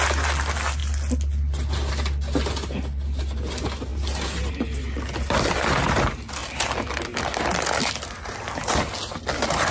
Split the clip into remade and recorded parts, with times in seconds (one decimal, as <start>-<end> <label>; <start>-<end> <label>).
0.0-9.7 recorded